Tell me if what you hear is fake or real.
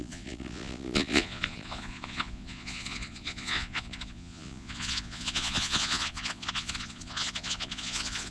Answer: fake